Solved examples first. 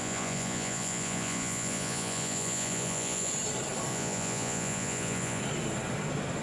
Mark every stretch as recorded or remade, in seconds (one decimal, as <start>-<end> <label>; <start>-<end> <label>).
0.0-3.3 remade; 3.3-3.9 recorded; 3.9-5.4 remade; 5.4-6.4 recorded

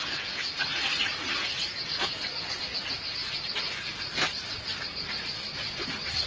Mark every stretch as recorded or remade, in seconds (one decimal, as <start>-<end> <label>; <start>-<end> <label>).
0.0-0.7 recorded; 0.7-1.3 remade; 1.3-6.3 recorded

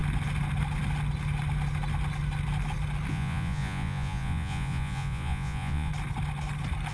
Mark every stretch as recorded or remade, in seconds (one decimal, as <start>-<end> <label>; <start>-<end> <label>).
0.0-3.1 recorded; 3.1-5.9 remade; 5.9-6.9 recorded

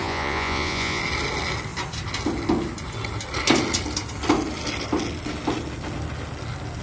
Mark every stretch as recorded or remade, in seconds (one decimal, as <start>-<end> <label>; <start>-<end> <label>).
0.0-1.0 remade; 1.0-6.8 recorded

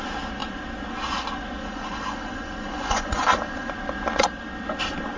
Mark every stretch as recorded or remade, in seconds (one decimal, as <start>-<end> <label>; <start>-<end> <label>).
0.0-1.6 recorded; 1.6-3.7 remade; 3.7-5.2 recorded

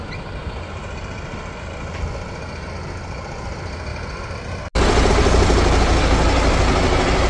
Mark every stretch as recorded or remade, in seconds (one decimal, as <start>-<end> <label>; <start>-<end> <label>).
0.0-7.3 recorded

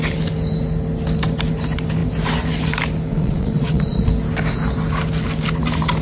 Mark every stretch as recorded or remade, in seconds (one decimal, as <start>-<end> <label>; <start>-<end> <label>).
0.0-3.1 recorded; 3.1-4.1 remade; 4.1-6.0 recorded